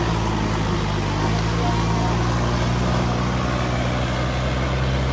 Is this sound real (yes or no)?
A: yes